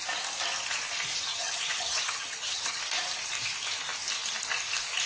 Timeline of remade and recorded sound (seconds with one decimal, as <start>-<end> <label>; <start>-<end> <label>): 0.0-1.3 recorded; 1.3-2.8 remade; 2.8-5.1 recorded

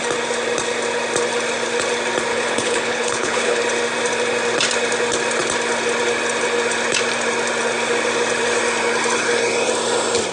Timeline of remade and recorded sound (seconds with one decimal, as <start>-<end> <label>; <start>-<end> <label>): 0.0-2.3 recorded; 2.3-3.6 remade; 3.6-10.3 recorded

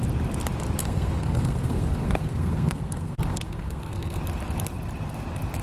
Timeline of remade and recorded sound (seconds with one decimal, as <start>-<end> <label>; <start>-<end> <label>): 0.0-0.8 recorded; 0.8-4.2 remade; 4.2-5.6 recorded

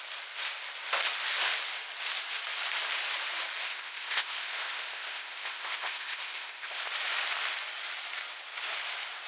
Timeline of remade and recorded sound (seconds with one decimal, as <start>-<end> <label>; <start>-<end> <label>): 0.0-3.6 recorded; 3.6-6.9 remade; 6.9-9.3 recorded

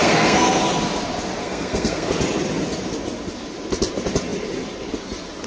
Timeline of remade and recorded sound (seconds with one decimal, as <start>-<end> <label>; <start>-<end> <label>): 0.0-0.6 remade; 0.6-1.4 recorded; 1.4-2.1 remade; 2.1-5.5 recorded